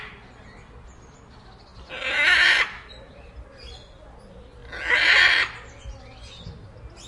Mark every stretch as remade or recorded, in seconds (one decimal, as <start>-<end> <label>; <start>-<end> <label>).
0.0-7.1 recorded